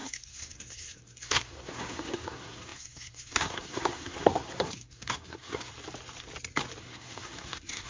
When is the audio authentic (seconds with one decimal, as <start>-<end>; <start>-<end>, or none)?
5.7-6.8